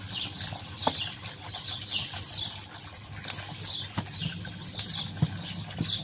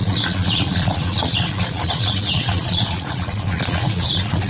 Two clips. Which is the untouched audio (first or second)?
first